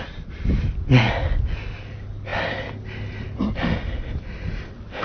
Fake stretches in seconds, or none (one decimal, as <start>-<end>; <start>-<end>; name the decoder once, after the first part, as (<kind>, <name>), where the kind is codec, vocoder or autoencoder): none